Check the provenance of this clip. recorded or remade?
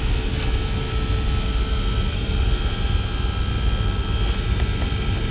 recorded